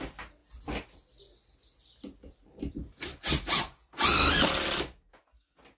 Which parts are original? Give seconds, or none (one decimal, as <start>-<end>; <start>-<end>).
0.0-5.8